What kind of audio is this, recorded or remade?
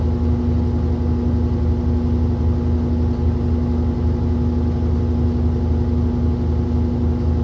recorded